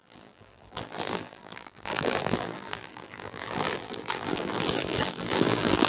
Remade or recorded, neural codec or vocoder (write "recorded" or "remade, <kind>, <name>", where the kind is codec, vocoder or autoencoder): remade, vocoder, BigVGAN v2